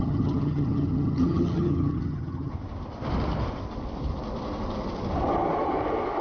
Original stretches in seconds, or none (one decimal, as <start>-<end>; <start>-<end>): 2.5-6.2